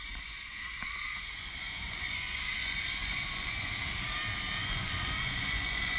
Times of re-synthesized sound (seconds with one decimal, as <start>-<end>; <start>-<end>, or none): 0.0-3.7; 4.6-6.0